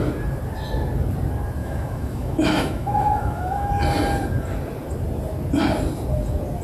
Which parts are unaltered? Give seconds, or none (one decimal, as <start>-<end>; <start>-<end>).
0.0-1.6; 3.7-6.6